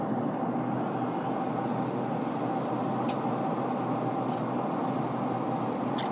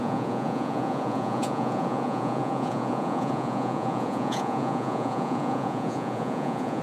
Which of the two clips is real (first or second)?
first